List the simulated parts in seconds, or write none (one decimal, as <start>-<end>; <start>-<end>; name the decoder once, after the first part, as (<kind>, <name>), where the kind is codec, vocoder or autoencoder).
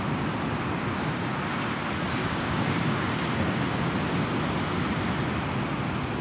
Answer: 2.2-3.0 (codec, DAC)